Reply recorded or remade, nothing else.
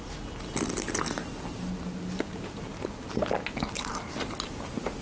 recorded